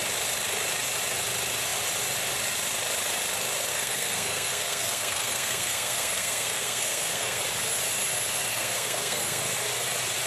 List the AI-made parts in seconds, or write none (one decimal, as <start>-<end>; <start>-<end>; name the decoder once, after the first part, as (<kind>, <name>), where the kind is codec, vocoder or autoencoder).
3.7-7.4 (codec, SNAC); 8.5-9.4